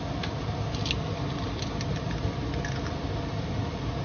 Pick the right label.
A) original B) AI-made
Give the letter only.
A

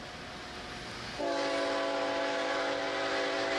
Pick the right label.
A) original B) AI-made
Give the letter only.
A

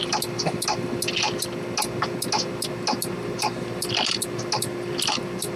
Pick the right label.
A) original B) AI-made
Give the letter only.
A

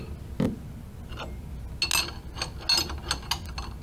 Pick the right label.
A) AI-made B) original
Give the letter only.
B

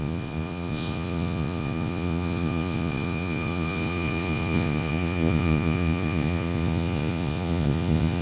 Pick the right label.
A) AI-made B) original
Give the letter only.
A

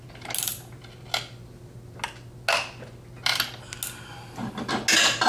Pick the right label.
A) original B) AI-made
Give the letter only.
A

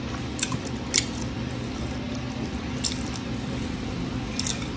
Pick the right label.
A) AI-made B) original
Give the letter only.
B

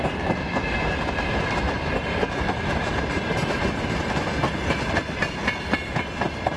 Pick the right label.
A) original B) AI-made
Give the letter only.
A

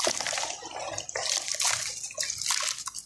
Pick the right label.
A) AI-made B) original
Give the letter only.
B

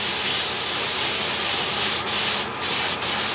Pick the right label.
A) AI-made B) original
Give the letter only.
B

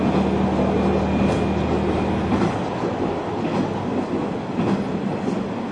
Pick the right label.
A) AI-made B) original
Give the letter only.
B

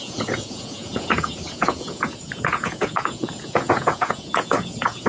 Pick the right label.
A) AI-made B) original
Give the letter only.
A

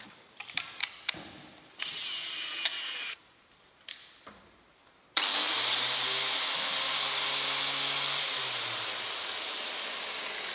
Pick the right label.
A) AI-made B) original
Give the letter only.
B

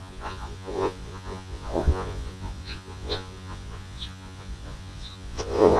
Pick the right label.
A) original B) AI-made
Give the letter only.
B